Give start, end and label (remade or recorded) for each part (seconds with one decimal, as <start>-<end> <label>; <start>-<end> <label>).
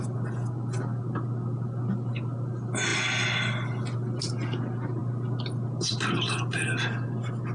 0.0-7.5 recorded